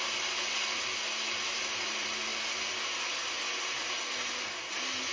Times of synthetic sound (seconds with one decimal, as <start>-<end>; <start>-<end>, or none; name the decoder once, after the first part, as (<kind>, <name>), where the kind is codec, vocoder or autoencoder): none